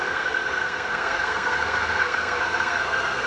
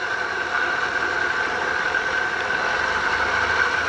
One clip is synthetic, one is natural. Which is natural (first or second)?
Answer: second